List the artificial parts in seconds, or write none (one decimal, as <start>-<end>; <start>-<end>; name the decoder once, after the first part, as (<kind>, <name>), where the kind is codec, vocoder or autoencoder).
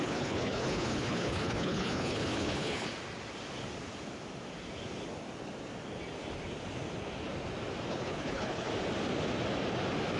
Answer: 0.0-2.9 (codec, HILCodec); 7.9-8.7